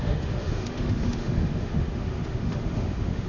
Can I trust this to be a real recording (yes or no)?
no